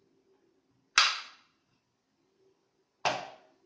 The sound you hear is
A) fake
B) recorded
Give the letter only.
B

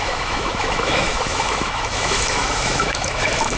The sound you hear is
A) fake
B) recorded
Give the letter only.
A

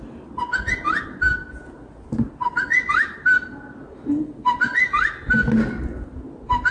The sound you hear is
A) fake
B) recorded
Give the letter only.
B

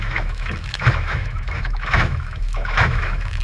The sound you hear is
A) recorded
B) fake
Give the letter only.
B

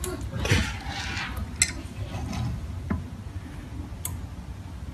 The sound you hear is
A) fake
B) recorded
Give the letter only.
B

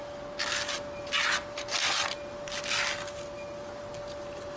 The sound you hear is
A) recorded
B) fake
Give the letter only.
A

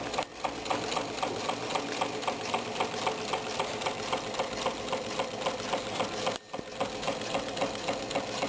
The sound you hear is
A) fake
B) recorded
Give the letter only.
B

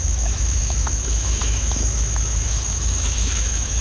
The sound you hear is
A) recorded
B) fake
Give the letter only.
B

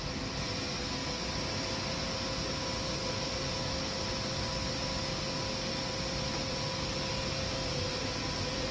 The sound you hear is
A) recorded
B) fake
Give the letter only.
A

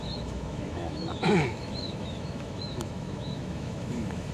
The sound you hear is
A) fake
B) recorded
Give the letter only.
A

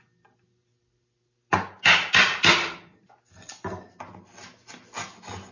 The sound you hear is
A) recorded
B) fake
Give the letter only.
A